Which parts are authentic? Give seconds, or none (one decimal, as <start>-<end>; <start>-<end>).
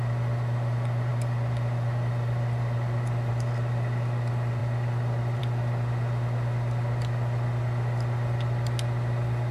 0.0-9.5